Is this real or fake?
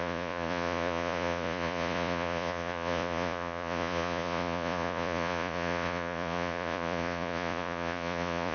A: fake